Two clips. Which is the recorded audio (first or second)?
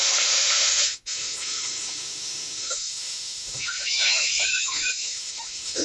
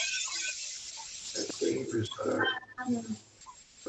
second